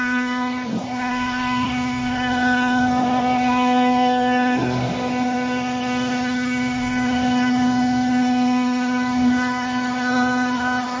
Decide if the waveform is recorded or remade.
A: remade